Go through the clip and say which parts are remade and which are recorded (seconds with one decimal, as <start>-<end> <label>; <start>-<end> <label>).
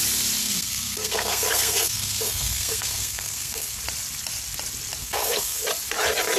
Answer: 0.0-0.4 recorded; 0.4-3.8 remade; 3.8-5.0 recorded; 5.0-5.6 remade; 5.6-6.4 recorded